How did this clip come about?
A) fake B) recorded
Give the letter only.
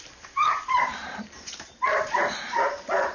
A